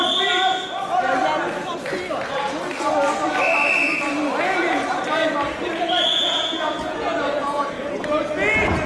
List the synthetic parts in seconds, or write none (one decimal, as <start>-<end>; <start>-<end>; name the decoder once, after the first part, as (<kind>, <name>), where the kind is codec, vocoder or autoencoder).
6.1-7.9 (vocoder, Vocos)